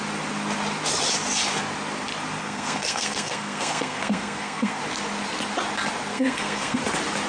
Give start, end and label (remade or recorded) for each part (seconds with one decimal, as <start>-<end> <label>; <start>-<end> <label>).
0.0-2.4 recorded; 2.4-4.8 remade; 4.8-6.1 recorded; 6.1-6.8 remade; 6.8-7.3 recorded